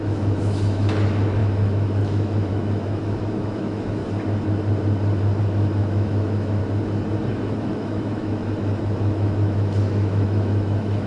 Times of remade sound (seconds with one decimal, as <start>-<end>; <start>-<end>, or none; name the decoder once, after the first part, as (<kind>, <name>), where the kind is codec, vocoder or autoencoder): 0.0-4.0 (autoencoder, DAC-VAE); 5.4-6.6; 7.3-11.1